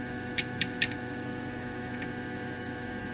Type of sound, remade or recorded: remade